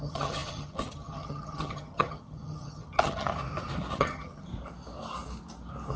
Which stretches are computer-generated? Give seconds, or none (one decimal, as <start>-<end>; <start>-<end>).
0.0-3.3; 3.9-4.5